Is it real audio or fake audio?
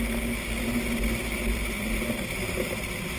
real